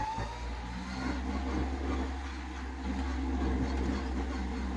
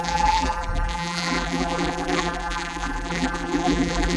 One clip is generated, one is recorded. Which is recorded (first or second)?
first